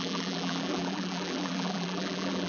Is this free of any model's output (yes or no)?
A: no